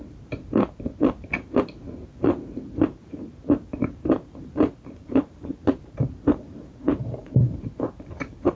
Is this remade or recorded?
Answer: remade